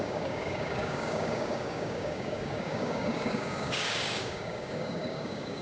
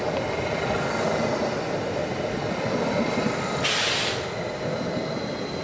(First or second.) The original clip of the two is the second